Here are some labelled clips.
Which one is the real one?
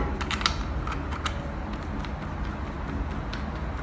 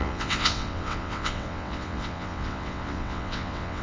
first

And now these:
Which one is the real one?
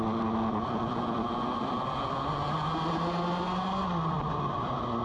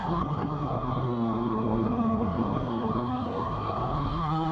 first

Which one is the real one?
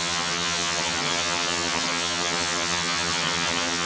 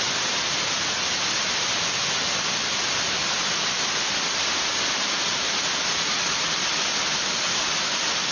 second